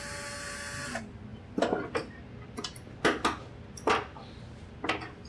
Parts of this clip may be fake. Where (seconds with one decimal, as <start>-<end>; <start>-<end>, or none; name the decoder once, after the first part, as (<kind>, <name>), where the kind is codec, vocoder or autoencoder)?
none